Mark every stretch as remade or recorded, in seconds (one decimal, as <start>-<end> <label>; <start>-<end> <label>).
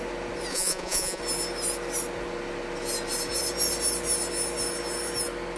0.0-0.5 recorded; 0.5-1.2 remade; 1.2-5.6 recorded